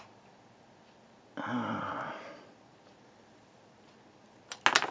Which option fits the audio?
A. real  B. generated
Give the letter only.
A